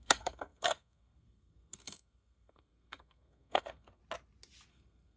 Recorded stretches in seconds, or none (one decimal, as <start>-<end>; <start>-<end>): 4.0-4.7